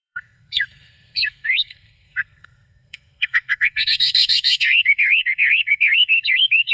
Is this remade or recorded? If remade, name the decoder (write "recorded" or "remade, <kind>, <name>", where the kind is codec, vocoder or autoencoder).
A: remade, codec, SNAC